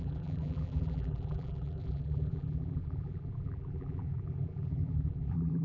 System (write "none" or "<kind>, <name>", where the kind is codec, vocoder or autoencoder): vocoder, BigVGAN v2